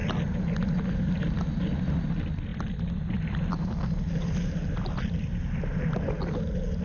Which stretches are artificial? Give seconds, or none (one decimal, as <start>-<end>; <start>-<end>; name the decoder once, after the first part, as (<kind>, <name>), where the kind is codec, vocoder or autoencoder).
none